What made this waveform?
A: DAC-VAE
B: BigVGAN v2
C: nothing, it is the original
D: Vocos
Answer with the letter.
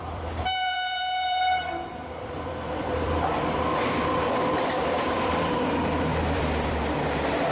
B